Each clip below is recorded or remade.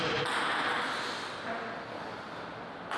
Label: recorded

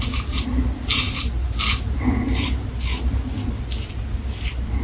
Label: recorded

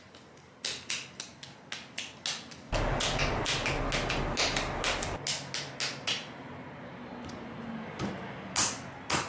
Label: recorded